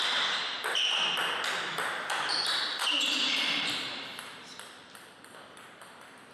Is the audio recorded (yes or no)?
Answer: yes